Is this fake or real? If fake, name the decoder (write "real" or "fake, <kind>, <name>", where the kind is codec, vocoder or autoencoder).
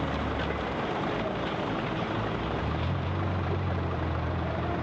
fake, vocoder, BigVGAN v2